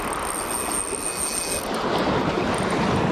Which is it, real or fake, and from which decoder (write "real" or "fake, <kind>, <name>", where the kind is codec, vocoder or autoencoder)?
real